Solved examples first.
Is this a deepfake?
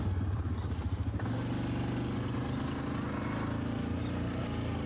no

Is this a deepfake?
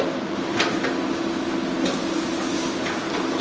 no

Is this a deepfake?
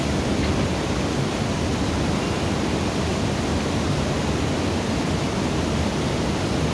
no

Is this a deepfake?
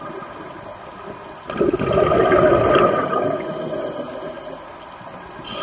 no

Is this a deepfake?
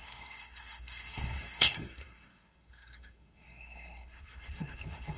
yes